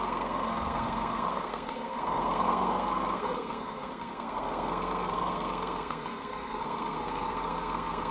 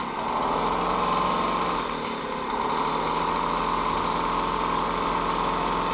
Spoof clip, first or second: first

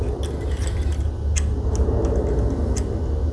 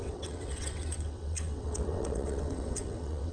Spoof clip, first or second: second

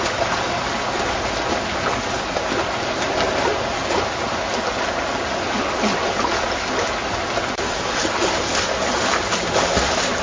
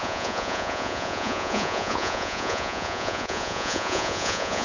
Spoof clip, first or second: second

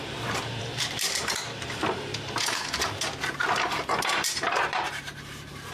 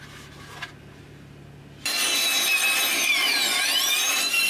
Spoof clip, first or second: first